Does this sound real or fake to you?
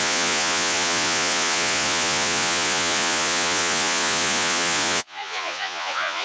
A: fake